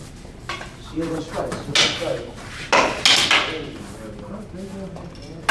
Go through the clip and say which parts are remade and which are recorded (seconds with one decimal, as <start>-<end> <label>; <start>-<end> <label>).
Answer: 0.0-1.4 remade; 1.4-5.5 recorded